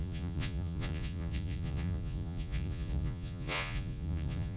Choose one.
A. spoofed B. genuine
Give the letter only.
A